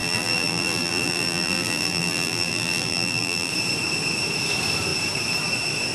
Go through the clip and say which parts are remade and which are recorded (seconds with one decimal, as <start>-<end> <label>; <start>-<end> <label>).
0.0-3.5 remade; 3.5-5.9 recorded